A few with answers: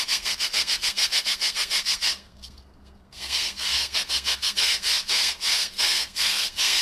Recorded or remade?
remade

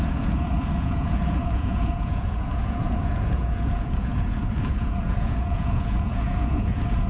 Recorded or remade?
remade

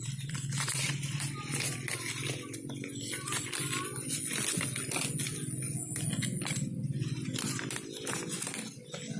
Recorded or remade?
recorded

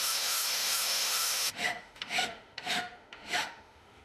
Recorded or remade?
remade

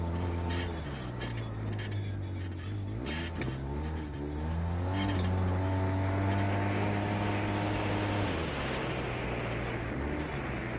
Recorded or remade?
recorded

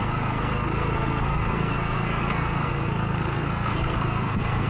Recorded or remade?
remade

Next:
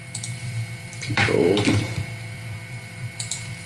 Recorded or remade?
remade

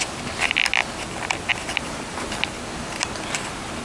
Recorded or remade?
recorded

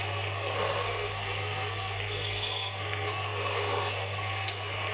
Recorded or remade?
remade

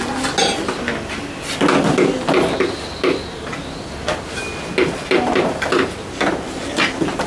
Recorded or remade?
recorded